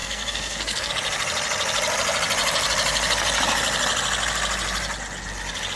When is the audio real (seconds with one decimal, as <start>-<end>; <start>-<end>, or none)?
0.9-5.8